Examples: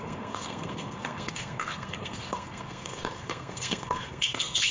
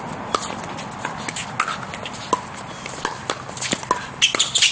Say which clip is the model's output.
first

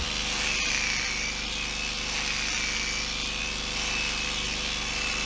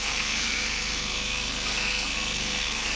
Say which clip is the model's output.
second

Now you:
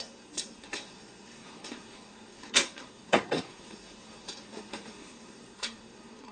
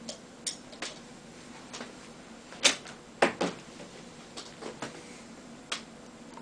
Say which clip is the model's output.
first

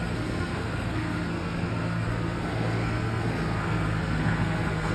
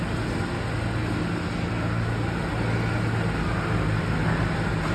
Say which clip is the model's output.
first